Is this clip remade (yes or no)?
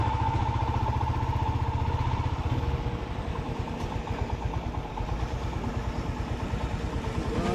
no